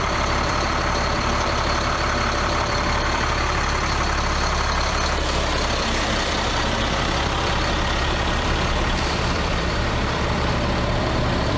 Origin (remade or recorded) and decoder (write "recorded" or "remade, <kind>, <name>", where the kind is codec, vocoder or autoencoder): remade, vocoder, BigVGAN v2